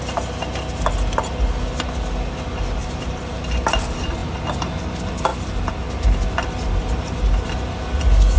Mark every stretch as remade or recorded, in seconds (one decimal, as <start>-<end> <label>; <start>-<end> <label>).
0.0-2.8 recorded; 2.8-3.6 remade; 3.6-8.4 recorded